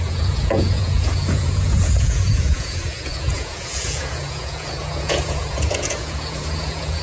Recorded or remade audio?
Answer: remade